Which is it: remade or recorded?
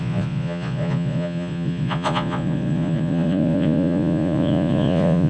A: remade